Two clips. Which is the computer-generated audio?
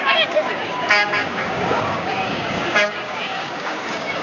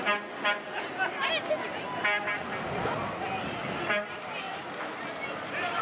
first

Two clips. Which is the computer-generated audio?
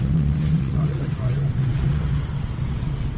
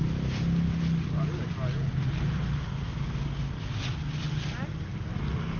first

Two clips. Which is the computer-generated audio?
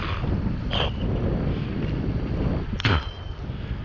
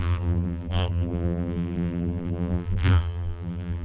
second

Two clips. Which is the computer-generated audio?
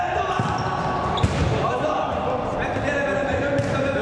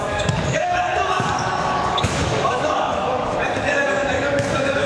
second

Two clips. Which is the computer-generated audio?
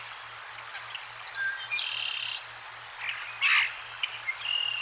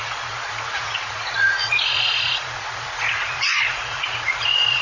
second